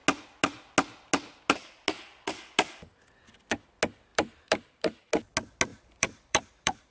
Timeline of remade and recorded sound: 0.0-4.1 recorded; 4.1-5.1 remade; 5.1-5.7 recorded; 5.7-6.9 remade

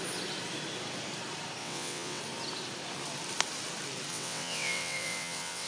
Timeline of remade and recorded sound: 0.0-1.6 recorded; 1.6-2.2 remade; 2.2-4.1 recorded; 4.1-5.7 remade

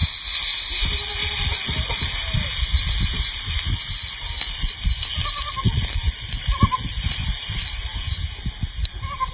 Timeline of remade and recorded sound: 0.0-7.9 recorded; 7.9-8.4 remade; 8.4-9.3 recorded

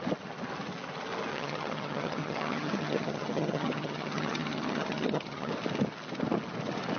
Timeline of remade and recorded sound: 0.0-1.3 recorded; 1.3-5.5 remade; 5.5-7.0 recorded

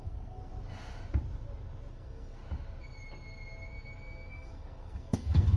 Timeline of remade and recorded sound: 0.0-0.5 remade; 0.5-1.9 recorded; 1.9-2.4 remade; 2.4-4.3 recorded; 4.3-5.6 remade

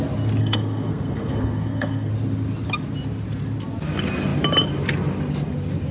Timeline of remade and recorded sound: 0.0-0.4 recorded; 0.4-2.1 remade; 2.1-5.9 recorded